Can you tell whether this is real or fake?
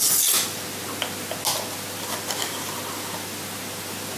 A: real